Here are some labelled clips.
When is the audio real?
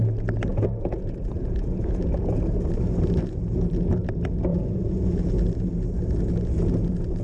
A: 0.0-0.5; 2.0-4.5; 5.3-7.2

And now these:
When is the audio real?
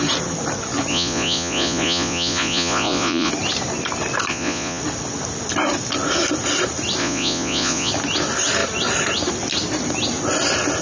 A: 0.0-0.9; 3.3-4.3; 4.8-7.0; 7.9-10.8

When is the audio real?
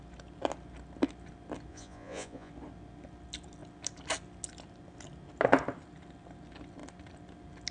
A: 0.0-1.7; 2.5-7.7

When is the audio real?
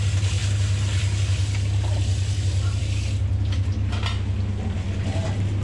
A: 0.0-5.6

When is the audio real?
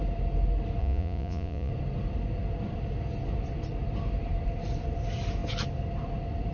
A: 0.0-0.8; 1.7-6.5